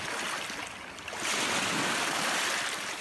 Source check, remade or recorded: recorded